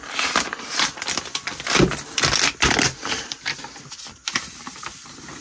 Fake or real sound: real